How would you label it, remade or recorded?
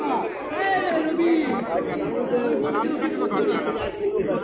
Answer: recorded